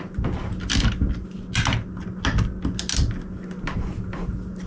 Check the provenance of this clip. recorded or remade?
recorded